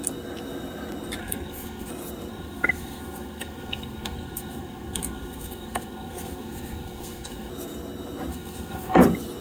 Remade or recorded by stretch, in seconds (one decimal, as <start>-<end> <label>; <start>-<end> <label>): 0.0-1.2 recorded; 1.2-1.9 remade; 1.9-2.3 recorded; 2.3-7.5 remade; 7.5-8.3 recorded; 8.3-9.0 remade; 9.0-9.4 recorded